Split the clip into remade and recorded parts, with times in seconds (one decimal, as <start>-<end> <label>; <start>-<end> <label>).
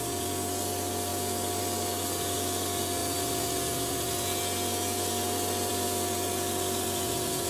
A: 0.0-7.5 recorded